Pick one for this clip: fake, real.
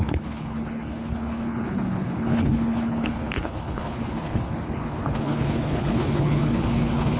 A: fake